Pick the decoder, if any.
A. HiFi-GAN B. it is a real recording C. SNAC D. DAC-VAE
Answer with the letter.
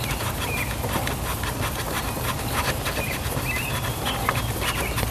B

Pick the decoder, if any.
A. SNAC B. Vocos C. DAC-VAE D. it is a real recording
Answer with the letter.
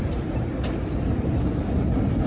D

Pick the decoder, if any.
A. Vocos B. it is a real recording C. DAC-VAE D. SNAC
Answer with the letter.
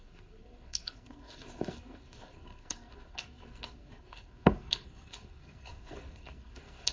D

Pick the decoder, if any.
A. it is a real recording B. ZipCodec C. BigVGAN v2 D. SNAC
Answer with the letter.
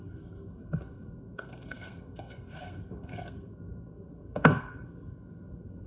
D